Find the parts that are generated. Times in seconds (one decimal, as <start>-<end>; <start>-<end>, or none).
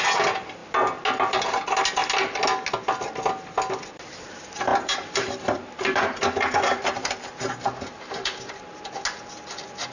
4.7-8.8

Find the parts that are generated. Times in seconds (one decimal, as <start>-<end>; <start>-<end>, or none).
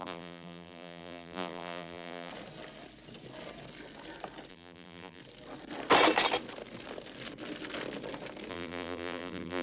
0.0-2.3; 4.5-5.2; 8.5-9.6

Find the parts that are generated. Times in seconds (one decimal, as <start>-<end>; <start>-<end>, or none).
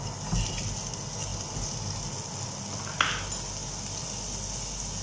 none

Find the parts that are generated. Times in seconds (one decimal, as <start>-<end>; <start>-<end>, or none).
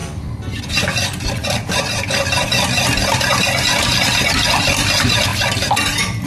1.4-2.2; 5.3-6.3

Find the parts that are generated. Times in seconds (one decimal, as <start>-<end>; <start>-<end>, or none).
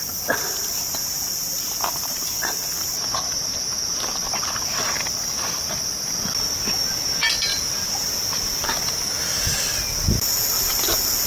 4.1-4.8; 7.5-8.3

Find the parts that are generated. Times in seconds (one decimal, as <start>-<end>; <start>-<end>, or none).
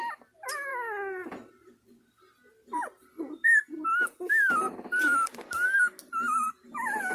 none